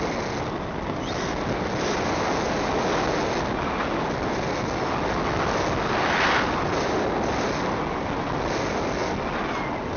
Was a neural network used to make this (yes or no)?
no